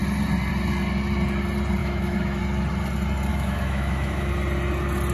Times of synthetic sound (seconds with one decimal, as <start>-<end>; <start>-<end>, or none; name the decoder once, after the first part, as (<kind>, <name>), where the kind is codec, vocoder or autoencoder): 1.8-2.4 (autoencoder, DAC-VAE); 3.3-4.3